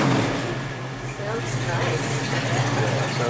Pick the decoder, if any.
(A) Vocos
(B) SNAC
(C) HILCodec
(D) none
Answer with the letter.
D